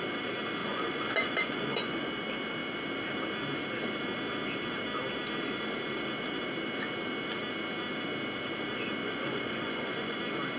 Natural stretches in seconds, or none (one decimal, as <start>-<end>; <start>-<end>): 0.0-0.6; 2.1-9.0; 10.2-10.6